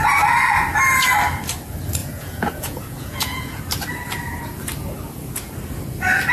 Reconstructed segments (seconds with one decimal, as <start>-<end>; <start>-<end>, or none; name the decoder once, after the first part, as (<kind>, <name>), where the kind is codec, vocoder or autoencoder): 2.0-3.6 (vocoder, Vocos)

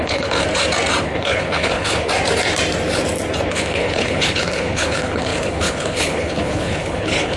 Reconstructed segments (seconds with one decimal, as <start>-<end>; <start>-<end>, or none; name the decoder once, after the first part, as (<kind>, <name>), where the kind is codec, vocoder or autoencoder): 0.0-0.4 (codec, HILCodec); 1.0-2.1; 3.5-7.4